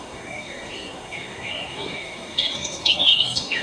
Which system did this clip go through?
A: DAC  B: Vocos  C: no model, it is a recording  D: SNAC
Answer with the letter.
D